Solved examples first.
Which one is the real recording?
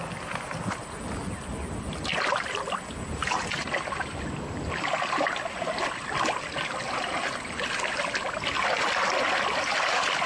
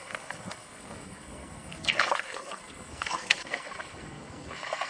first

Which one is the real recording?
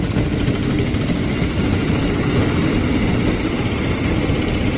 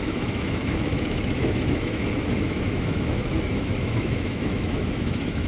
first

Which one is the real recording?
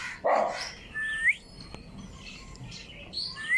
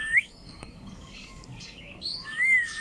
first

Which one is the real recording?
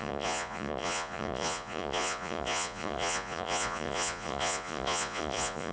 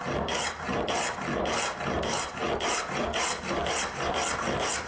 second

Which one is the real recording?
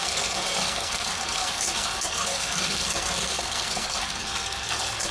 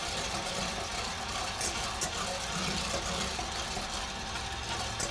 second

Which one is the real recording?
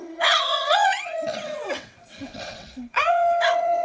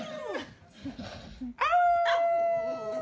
second